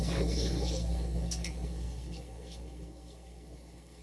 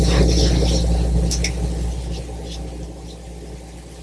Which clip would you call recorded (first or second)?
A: second